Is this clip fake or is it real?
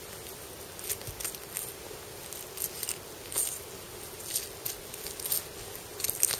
real